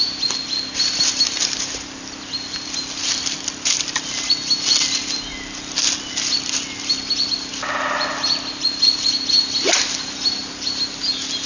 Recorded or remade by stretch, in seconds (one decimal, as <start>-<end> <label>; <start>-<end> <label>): 0.0-11.5 recorded